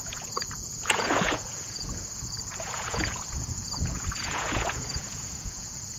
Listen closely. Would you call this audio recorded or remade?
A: remade